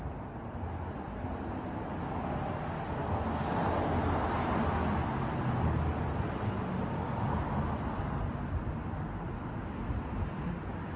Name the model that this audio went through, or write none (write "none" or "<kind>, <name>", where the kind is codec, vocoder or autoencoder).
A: none